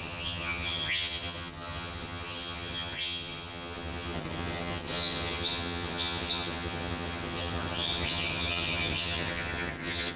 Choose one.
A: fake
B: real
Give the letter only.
A